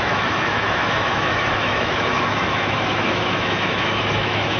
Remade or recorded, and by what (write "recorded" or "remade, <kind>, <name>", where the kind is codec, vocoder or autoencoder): remade, autoencoder, DAC-VAE